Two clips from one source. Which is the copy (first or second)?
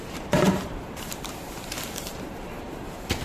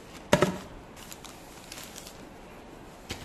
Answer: first